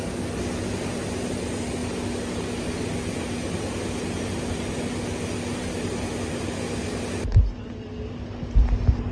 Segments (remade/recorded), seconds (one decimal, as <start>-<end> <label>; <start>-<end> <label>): 0.0-9.1 recorded